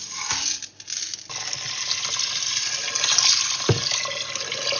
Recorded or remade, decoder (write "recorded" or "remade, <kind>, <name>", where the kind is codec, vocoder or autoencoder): recorded